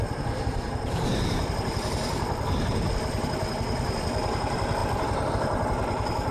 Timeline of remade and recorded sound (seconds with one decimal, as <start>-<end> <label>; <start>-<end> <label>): 0.0-3.5 remade; 3.5-4.8 recorded; 4.8-5.3 remade; 5.3-6.3 recorded